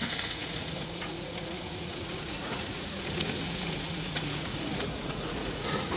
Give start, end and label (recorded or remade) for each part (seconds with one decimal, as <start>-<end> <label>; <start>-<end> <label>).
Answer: 0.0-6.0 remade